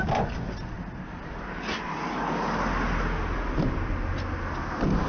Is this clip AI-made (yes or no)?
no